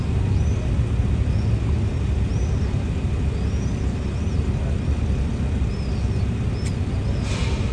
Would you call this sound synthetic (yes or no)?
no